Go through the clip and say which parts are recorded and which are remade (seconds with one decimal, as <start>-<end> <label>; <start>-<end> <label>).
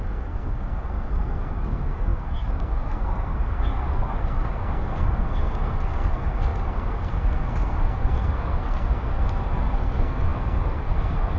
0.0-11.4 remade